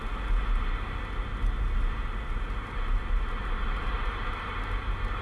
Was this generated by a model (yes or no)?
no